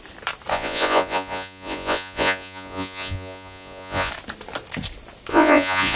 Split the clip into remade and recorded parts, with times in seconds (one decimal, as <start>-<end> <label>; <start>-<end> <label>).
0.0-0.5 recorded; 0.5-4.1 remade; 4.1-5.3 recorded; 5.3-6.0 remade